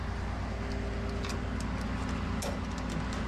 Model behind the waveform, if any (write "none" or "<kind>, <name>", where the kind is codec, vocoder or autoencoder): none